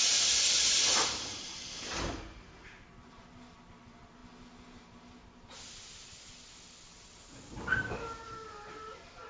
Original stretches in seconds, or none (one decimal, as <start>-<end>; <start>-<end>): 0.0-9.3